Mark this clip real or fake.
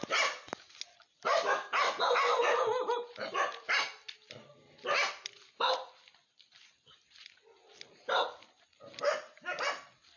real